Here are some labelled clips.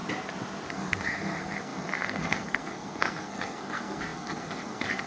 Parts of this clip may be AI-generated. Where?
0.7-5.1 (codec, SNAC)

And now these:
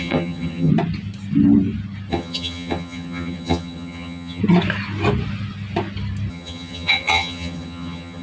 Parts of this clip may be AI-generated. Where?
0.0-0.7 (vocoder, HiFi-GAN); 2.1-4.4; 6.3-8.2

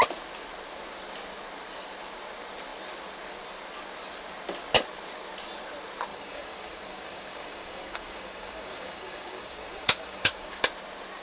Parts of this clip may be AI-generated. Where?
6.1-10.6 (codec, DAC)

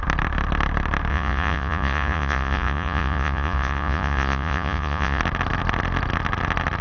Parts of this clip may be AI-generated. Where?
1.1-5.2 (vocoder, Vocos)